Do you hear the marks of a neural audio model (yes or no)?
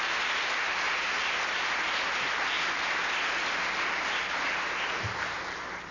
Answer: no